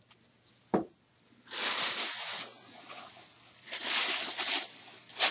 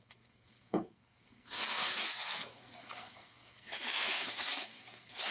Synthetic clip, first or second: second